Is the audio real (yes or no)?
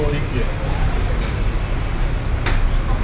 yes